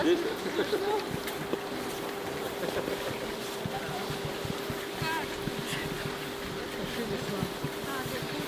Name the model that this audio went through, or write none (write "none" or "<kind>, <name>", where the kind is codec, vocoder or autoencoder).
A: none